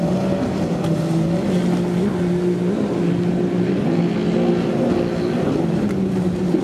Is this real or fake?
real